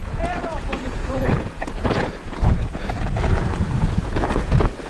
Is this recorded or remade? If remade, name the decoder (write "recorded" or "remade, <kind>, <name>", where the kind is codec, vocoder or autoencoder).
remade, vocoder, Vocos